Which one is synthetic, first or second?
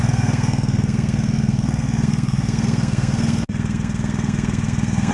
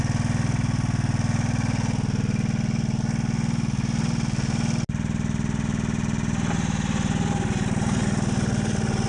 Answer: first